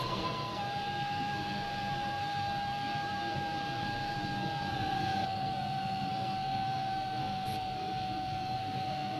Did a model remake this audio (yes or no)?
yes